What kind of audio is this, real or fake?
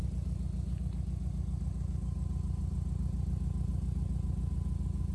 real